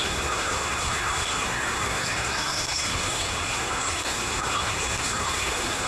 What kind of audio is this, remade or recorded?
remade